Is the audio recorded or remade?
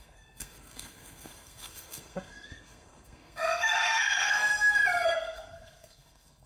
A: remade